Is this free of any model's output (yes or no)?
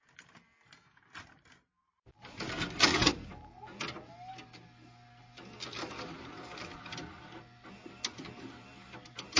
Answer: yes